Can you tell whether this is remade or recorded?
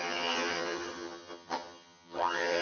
remade